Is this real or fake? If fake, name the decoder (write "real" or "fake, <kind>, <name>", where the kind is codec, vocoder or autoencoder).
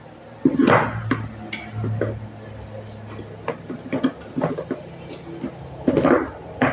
real